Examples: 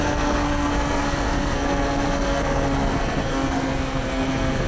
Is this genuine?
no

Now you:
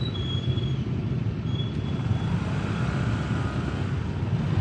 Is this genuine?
yes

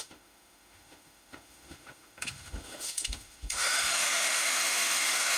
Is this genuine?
no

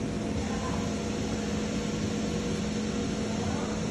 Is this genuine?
yes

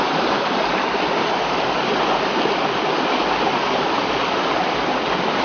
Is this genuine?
yes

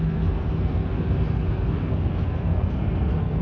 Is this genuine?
no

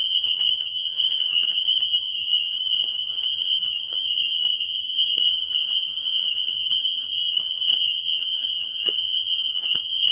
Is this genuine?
no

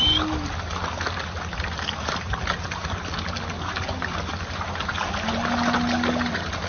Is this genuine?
yes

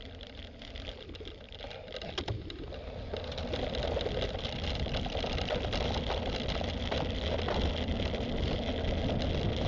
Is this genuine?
yes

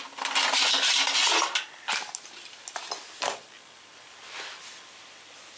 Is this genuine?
yes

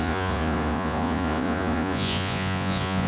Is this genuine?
no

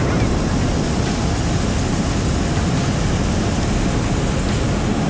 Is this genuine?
yes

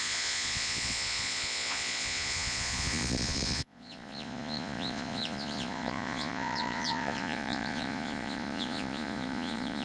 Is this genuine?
no